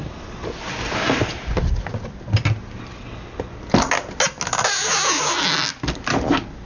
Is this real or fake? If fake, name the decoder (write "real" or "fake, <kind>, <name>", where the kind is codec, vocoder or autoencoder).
real